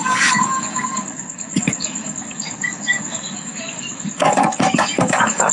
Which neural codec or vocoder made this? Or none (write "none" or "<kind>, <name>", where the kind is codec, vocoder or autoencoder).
codec, DAC